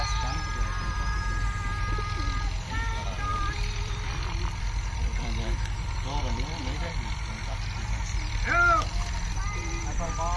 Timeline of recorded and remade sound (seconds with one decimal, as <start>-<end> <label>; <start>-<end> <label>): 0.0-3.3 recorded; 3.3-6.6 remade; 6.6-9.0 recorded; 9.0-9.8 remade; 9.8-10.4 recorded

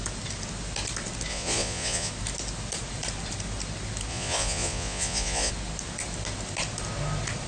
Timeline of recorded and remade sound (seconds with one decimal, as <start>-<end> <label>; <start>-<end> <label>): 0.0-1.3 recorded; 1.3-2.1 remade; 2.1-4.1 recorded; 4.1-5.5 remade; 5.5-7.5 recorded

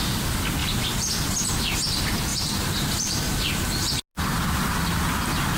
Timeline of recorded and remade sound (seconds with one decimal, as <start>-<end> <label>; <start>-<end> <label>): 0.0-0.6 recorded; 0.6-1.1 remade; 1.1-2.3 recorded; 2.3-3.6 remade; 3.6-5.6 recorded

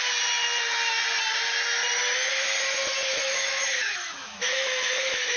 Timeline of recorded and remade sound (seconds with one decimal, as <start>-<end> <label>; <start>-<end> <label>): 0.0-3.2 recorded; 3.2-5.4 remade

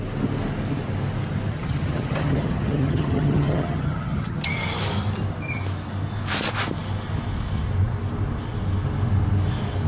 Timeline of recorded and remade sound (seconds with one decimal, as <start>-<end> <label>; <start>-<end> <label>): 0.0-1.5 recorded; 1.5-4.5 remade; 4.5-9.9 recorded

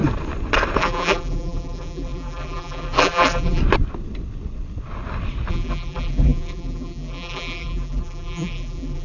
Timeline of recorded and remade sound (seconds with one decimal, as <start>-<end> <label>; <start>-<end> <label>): 0.0-0.8 recorded; 0.8-3.6 remade; 3.6-5.5 recorded; 5.5-9.0 remade